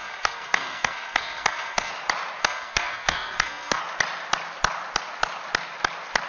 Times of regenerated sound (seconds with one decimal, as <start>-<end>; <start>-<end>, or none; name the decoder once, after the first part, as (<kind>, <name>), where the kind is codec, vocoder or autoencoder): 0.0-1.9 (codec, SNAC); 2.4-3.8